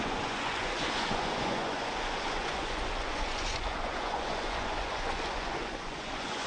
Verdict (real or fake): fake